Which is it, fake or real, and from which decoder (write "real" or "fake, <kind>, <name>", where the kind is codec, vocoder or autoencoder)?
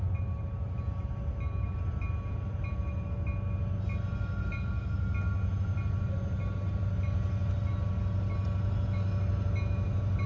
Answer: real